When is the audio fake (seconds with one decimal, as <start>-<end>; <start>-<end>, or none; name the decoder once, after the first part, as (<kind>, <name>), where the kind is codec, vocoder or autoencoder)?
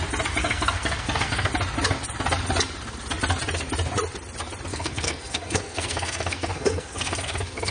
0.4-1.5 (codec, SNAC); 4.7-7.7